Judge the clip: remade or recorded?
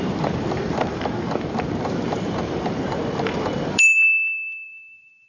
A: remade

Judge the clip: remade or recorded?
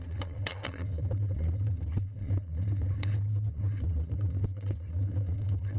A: remade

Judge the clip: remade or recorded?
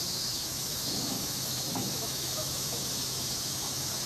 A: remade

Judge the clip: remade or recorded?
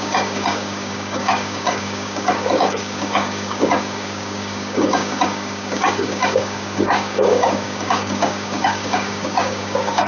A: remade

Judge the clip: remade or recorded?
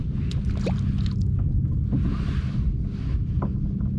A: recorded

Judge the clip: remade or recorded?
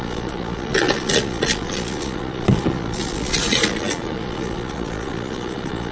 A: remade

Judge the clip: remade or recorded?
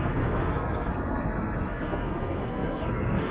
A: remade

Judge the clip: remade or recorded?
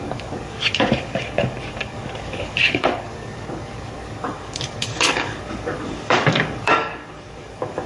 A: remade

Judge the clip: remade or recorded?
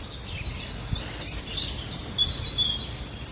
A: recorded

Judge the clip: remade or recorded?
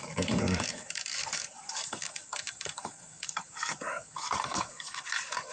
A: remade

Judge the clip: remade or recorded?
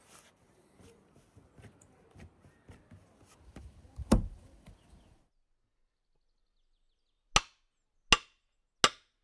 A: recorded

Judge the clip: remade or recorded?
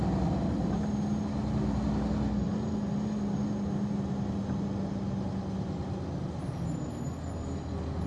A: recorded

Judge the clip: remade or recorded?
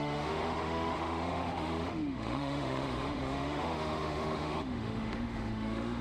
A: remade